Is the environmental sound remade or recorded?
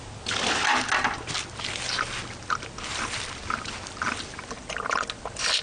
recorded